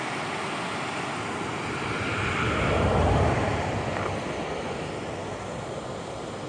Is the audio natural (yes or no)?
yes